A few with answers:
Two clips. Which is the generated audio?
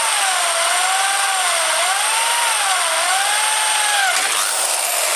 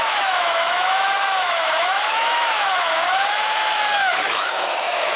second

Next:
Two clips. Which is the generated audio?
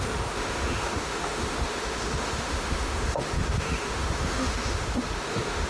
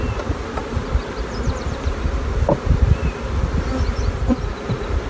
first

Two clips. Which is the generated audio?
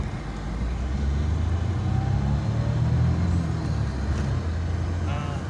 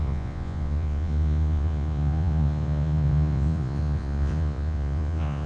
second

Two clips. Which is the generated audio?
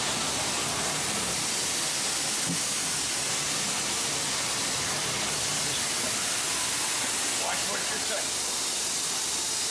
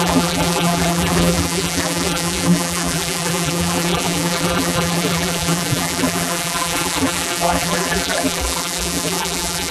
second